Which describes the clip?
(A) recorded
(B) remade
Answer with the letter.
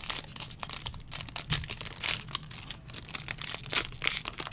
A